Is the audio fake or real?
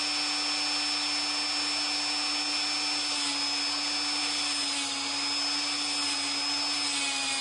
real